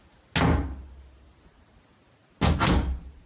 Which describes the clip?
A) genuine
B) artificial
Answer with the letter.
A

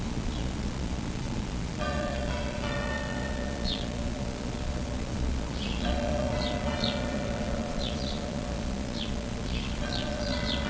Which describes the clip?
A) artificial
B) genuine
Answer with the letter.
A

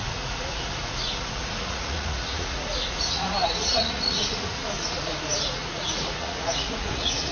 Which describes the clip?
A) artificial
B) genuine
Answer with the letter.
A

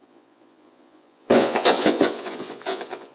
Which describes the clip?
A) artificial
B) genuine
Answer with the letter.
A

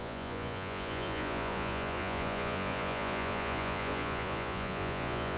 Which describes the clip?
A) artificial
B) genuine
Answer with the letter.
A